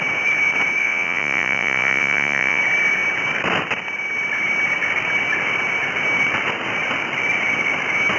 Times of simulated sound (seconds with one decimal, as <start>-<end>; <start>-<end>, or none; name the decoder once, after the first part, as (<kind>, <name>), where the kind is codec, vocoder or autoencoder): 0.8-2.6 (vocoder, Vocos)